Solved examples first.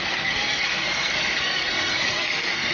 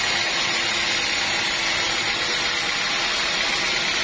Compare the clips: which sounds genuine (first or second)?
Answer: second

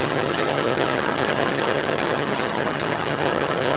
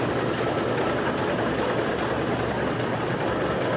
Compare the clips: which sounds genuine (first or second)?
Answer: second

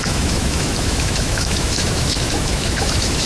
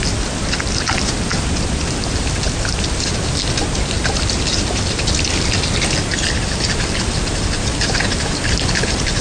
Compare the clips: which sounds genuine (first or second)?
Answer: second